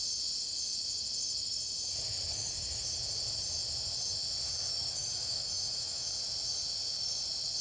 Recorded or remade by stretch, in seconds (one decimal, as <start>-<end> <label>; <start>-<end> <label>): 0.0-4.8 recorded; 4.8-6.2 remade; 6.2-7.6 recorded